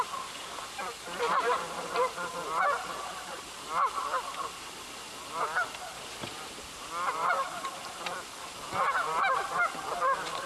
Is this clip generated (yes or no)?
no